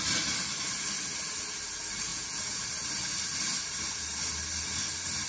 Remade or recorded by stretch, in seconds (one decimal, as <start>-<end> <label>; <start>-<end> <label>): 0.0-2.1 recorded; 2.1-2.6 remade; 2.6-5.3 recorded